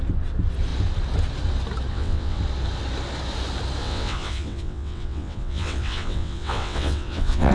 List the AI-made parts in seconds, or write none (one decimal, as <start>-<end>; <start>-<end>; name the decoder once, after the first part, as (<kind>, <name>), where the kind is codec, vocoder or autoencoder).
1.9-2.4 (vocoder, WaveNeXt); 3.8-7.5